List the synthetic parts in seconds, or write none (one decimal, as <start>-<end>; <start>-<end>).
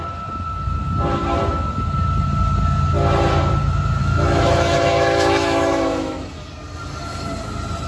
4.0-6.5